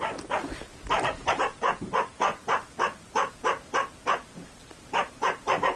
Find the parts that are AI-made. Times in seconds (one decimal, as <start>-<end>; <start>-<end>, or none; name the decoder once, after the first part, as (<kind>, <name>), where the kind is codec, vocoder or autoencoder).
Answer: 0.0-0.7 (vocoder, BigVGAN v2); 1.3-5.8